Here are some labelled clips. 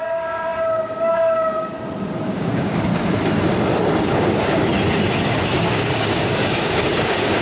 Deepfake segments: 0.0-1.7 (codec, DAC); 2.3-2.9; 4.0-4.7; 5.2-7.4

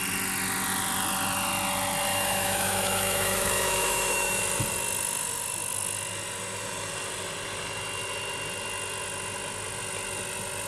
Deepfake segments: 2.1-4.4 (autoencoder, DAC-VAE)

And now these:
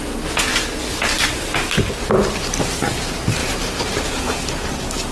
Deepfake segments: 0.5-1.9 (vocoder, BigVGAN v2); 3.4-4.3

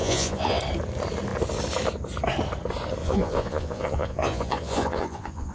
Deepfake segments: 0.0-0.6 (vocoder, Vocos); 3.0-5.5

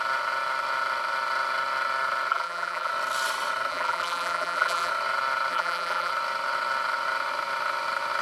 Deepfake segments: 2.3-2.9 (vocoder, BigVGAN v2); 3.7-4.9; 5.5-6.1

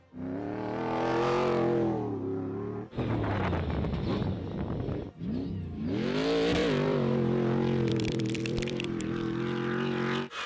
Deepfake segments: 6.6-9.1 (vocoder, BigVGAN v2)